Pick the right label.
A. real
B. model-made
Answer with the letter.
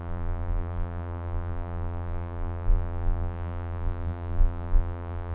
B